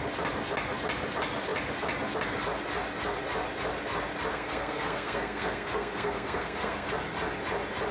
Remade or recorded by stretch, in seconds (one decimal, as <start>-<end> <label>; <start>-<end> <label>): 0.0-4.3 recorded; 4.3-6.9 remade; 6.9-7.9 recorded